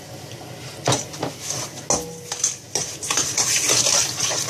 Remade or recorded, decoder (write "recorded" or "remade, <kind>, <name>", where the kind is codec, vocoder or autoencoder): recorded